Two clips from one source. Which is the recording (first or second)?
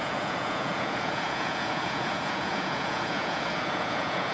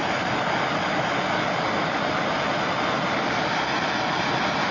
second